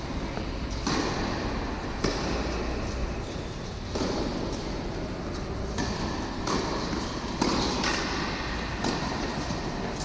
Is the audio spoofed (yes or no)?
no